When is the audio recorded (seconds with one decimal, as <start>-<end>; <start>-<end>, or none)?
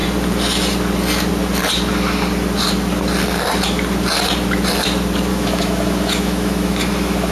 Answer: 0.0-5.3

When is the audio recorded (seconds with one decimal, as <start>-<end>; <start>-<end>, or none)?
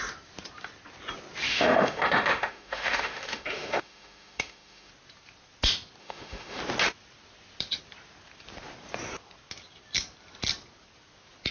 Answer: 0.0-1.5; 4.9-6.0; 6.6-11.5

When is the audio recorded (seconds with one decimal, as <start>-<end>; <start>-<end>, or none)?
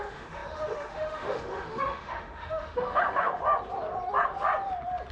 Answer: 3.4-5.1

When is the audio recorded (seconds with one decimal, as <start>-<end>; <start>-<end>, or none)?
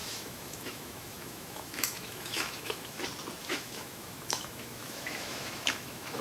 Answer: 3.0-3.4